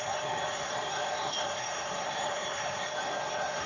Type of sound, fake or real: fake